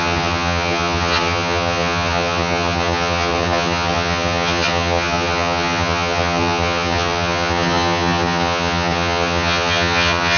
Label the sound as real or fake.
fake